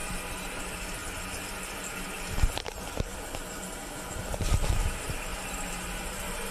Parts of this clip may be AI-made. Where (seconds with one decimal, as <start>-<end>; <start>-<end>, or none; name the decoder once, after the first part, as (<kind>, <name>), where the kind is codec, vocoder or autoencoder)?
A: 0.0-1.0 (vocoder, BigVGAN v2); 2.1-5.3; 6.1-6.5